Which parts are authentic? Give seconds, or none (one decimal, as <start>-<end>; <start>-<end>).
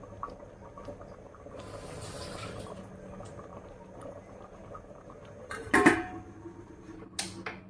0.0-3.5; 5.7-7.7